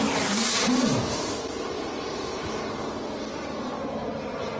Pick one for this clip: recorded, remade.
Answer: recorded